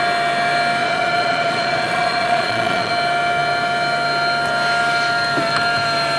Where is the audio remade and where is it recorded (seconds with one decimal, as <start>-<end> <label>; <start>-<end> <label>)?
0.0-0.8 recorded; 0.8-2.9 remade; 2.9-6.2 recorded